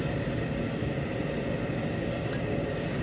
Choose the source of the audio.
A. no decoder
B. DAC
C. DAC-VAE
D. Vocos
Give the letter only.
A